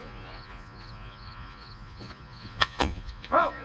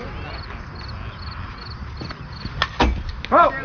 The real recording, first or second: second